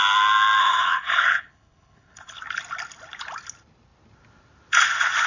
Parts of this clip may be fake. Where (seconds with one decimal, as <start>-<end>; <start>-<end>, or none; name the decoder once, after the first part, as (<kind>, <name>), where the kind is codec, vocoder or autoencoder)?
0.6-2.4 (codec, HILCodec)